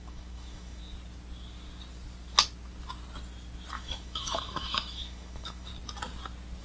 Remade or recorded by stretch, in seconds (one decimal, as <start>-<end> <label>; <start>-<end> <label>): 0.0-0.8 remade; 0.8-3.7 recorded; 3.7-5.7 remade; 5.7-6.6 recorded

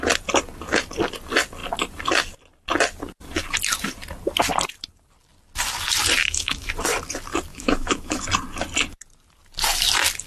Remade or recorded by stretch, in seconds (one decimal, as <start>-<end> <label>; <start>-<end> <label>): 0.0-6.2 recorded; 6.2-6.7 remade; 6.7-7.5 recorded; 7.5-8.2 remade; 8.2-10.3 recorded

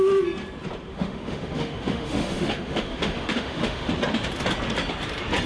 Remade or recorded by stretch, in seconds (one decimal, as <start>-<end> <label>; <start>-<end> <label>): 0.0-0.9 recorded; 0.9-3.9 remade; 3.9-5.5 recorded

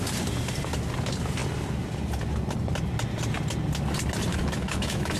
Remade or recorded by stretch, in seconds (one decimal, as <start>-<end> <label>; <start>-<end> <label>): 0.0-4.3 recorded; 4.3-5.2 remade

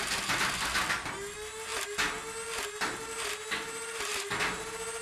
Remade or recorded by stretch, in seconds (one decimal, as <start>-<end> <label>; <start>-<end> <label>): 0.0-5.0 recorded

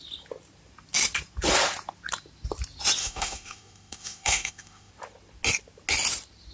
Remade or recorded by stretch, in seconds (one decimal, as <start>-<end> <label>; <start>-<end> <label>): 0.0-3.0 recorded; 3.0-4.9 remade; 4.9-6.5 recorded